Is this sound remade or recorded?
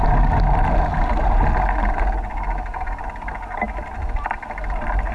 recorded